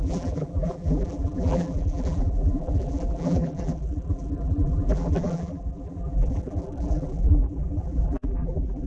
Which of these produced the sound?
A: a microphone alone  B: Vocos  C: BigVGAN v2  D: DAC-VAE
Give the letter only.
C